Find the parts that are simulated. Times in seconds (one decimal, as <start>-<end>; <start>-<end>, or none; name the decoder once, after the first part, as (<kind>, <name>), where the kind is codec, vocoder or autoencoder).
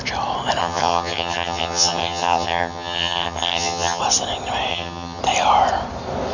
0.6-4.0 (vocoder, HiFi-GAN); 4.7-5.2